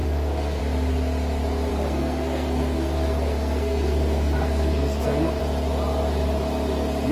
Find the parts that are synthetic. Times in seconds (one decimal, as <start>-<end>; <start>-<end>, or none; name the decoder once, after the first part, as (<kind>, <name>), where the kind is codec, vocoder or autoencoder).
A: 0.0-0.6 (codec, SNAC); 1.7-5.4